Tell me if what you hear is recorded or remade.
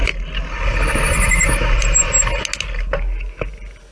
recorded